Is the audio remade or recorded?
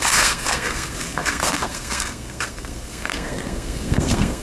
remade